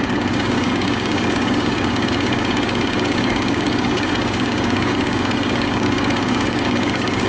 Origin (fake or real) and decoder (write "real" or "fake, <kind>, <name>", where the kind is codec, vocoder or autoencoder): fake, codec, DAC